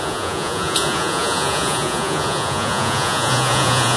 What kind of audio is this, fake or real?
fake